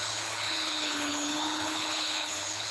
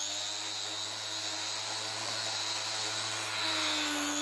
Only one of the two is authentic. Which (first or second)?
second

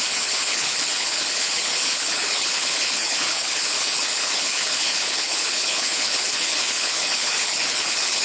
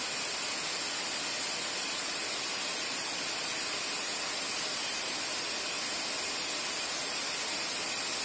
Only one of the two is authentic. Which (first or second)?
second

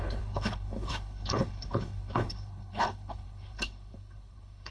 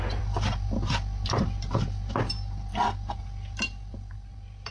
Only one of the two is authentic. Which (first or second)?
second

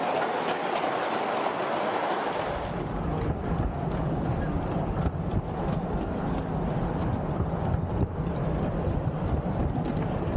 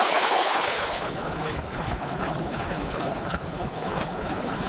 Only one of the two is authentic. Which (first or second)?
first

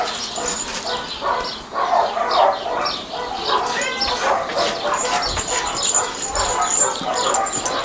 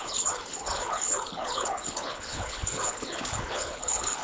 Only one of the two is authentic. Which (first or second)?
first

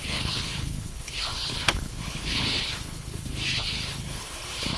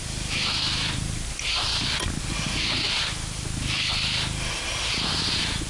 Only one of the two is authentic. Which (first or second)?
second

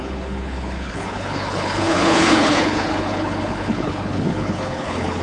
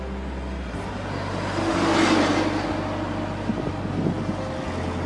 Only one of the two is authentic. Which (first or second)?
second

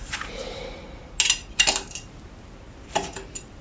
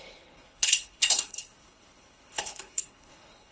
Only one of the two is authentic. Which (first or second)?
first